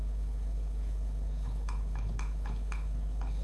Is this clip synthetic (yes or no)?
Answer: yes